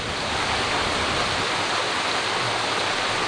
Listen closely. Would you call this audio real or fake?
real